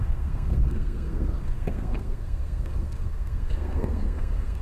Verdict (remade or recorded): remade